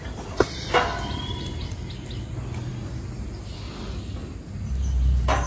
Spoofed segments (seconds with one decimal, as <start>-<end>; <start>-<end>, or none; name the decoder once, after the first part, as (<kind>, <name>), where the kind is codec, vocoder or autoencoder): none